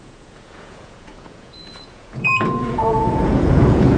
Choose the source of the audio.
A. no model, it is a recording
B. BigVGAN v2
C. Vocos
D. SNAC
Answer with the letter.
C